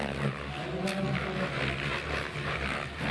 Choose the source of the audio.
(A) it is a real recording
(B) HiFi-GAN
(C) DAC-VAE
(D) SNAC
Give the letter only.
A